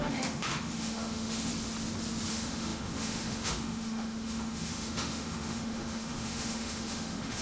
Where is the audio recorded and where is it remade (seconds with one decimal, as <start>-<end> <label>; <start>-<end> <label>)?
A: 0.0-1.5 remade; 1.5-2.3 recorded; 2.3-7.4 remade